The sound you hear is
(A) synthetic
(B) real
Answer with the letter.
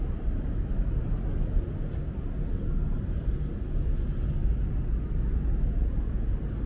B